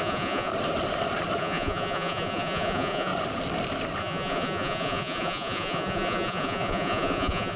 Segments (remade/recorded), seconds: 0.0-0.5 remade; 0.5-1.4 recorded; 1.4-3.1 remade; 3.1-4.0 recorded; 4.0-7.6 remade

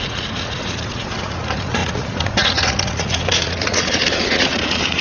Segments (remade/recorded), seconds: 0.0-5.0 remade

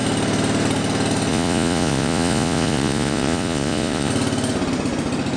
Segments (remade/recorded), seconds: 0.0-1.3 recorded; 1.3-4.1 remade; 4.1-5.4 recorded

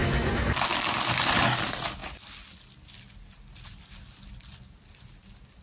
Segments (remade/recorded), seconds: 0.0-5.6 recorded

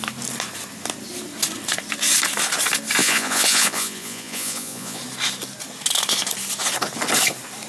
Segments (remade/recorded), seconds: 0.0-3.0 recorded; 3.0-5.0 remade; 5.0-7.7 recorded

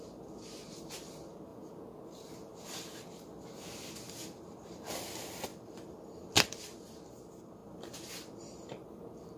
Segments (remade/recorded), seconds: 0.0-1.5 recorded; 1.5-2.0 remade; 2.0-9.4 recorded